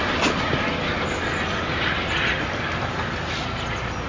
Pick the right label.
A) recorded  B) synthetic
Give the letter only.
A